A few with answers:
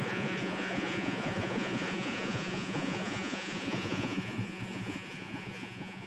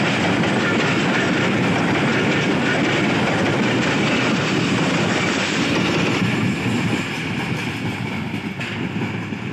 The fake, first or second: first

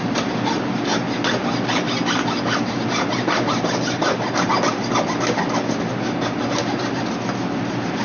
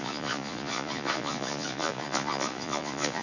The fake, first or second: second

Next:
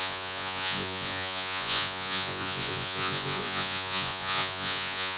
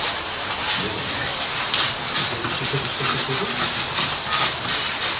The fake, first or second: first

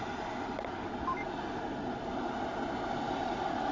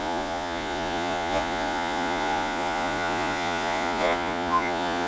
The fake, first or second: second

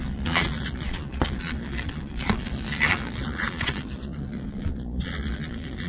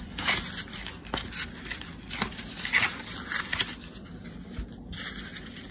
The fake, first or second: first